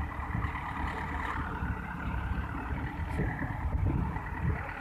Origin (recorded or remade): remade